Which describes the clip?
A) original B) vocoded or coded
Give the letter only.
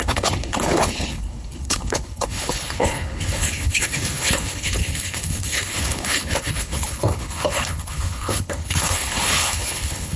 B